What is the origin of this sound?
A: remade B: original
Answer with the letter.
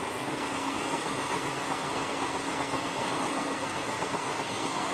A